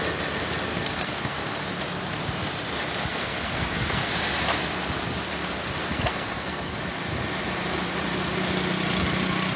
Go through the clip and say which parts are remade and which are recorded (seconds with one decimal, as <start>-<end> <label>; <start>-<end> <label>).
0.0-0.7 recorded; 0.7-1.6 remade; 1.6-3.1 recorded; 3.1-4.1 remade; 4.1-5.8 recorded; 5.8-6.8 remade; 6.8-9.6 recorded